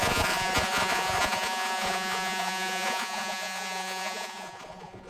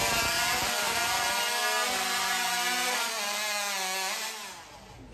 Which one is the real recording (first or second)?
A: second